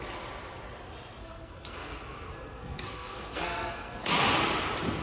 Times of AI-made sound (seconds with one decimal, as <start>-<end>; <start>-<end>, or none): 1.2-4.1